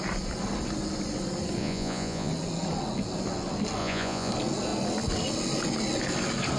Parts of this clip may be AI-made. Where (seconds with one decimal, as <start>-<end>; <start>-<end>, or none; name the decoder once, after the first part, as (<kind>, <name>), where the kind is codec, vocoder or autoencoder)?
1.6-2.3 (vocoder, Vocos); 3.8-4.3